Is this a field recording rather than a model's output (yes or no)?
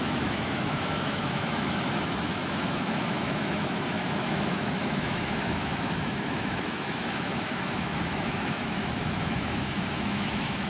no